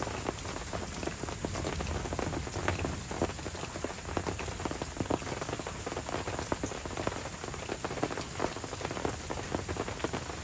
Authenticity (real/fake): real